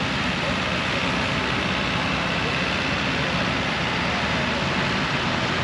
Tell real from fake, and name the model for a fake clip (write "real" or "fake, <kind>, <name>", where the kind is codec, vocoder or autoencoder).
real